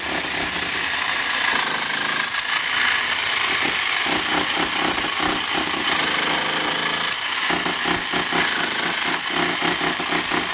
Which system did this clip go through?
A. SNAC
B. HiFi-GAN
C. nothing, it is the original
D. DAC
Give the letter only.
C